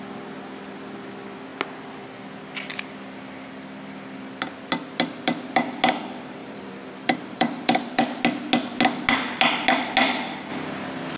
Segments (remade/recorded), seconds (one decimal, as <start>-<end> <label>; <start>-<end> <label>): 0.0-6.4 recorded; 6.4-8.2 remade; 8.2-11.2 recorded